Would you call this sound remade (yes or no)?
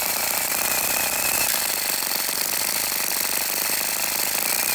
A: no